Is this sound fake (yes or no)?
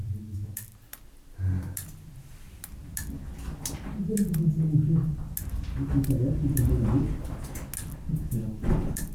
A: no